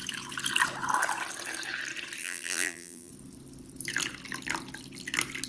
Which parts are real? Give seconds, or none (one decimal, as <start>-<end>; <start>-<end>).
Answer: 0.0-2.2; 3.1-5.5